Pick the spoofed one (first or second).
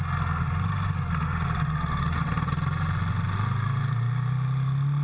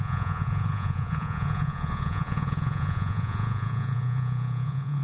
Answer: second